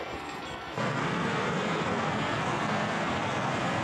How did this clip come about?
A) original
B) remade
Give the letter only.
B